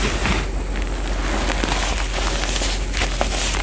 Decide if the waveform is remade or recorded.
recorded